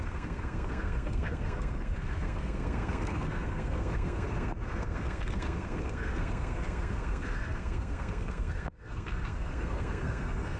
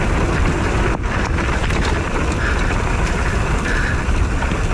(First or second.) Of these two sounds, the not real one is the first